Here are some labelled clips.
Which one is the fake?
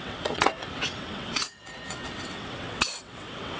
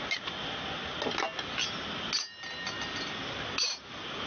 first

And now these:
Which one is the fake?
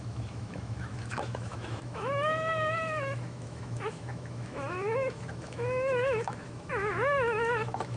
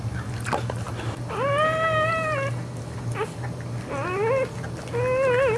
first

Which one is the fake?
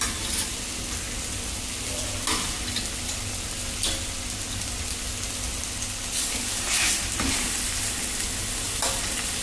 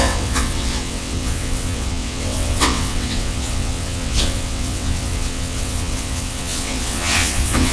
second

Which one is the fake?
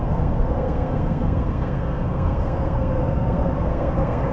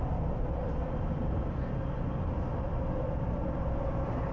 first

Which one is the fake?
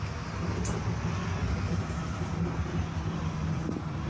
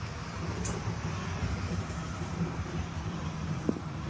second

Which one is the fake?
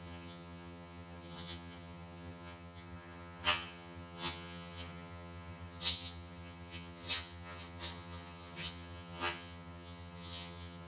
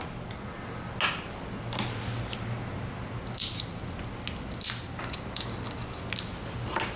first